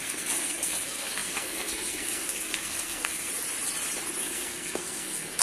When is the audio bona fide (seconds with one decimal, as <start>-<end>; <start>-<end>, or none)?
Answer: 3.3-4.2